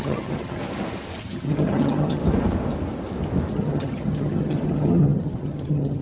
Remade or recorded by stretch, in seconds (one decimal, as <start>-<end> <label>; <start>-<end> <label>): 0.0-0.6 remade; 0.6-1.2 recorded; 1.2-2.2 remade; 2.2-3.5 recorded; 3.5-6.0 remade